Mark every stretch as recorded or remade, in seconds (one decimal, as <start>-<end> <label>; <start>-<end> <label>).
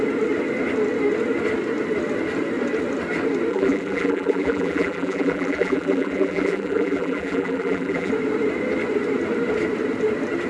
0.0-3.5 recorded; 3.5-8.1 remade; 8.1-10.5 recorded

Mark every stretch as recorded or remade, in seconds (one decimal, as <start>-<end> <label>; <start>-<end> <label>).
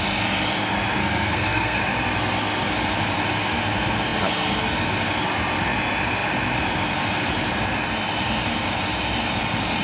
0.0-1.0 recorded; 1.0-1.8 remade; 1.8-9.8 recorded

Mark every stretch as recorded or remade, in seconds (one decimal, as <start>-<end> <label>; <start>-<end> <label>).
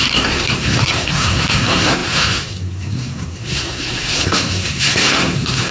0.0-5.7 remade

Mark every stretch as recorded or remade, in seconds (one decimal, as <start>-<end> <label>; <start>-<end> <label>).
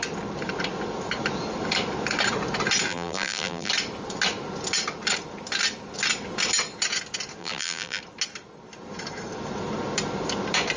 0.0-2.9 recorded; 2.9-3.7 remade; 3.7-7.4 recorded; 7.4-8.0 remade; 8.0-10.8 recorded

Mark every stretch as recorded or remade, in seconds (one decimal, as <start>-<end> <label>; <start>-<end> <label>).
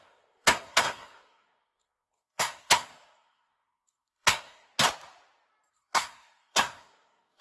0.0-4.7 remade; 4.7-5.7 recorded; 5.7-7.4 remade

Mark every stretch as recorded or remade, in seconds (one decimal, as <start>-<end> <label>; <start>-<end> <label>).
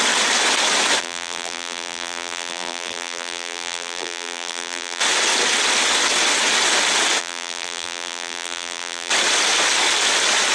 0.0-1.0 recorded; 1.0-5.0 remade; 5.0-7.2 recorded; 7.2-9.1 remade; 9.1-10.5 recorded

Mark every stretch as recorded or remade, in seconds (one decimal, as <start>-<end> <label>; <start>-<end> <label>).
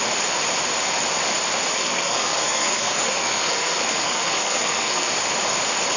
0.0-1.7 recorded; 1.7-5.1 remade; 5.1-6.0 recorded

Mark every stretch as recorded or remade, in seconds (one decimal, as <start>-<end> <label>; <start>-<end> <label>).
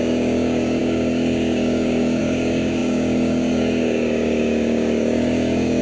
0.0-5.8 remade